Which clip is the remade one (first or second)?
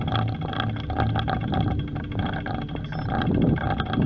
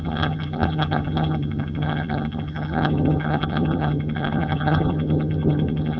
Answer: second